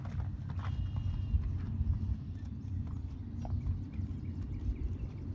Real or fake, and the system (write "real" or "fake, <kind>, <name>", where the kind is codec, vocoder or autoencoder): real